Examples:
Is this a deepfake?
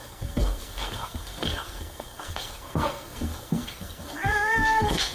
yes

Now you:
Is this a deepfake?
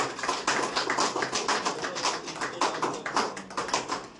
no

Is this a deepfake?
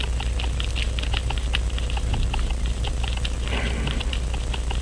no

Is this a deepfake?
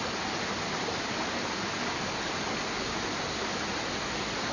no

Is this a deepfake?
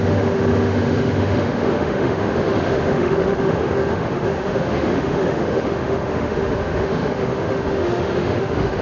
yes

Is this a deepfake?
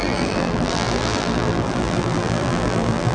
yes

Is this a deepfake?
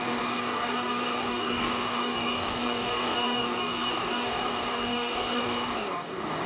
yes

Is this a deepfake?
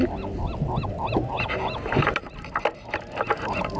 no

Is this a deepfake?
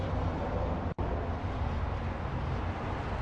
no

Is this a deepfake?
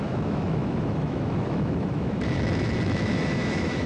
yes